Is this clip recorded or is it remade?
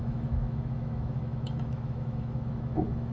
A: remade